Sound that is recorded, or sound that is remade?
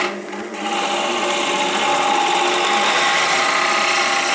recorded